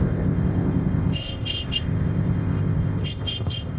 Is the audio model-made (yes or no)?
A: yes